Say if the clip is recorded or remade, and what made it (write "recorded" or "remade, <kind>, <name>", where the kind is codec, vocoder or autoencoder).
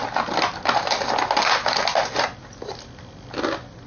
recorded